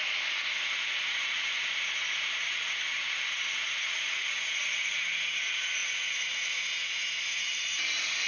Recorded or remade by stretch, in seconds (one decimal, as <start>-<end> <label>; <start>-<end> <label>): 0.0-8.3 remade